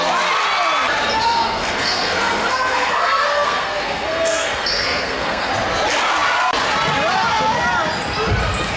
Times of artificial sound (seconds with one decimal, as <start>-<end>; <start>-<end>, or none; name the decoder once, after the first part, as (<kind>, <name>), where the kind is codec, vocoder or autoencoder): 1.2-5.5 (codec, SNAC)